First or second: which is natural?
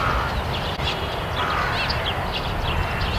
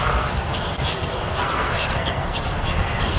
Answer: first